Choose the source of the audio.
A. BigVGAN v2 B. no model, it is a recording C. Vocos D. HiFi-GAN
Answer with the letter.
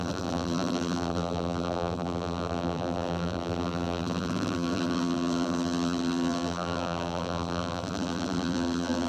A